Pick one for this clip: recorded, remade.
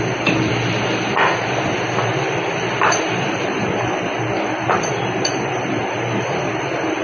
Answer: remade